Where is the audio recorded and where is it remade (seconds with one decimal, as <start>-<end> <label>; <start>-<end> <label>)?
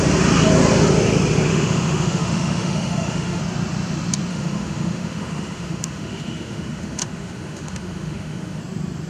0.0-1.5 recorded; 1.5-3.4 remade; 3.4-4.3 recorded; 4.3-8.6 remade; 8.6-9.1 recorded